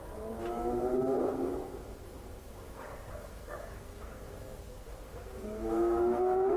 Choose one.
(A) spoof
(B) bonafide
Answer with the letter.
A